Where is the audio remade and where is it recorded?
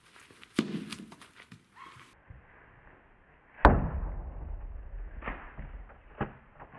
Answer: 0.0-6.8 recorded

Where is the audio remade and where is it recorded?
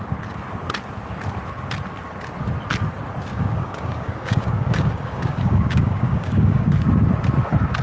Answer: 0.0-3.3 recorded; 3.3-6.7 remade; 6.7-7.8 recorded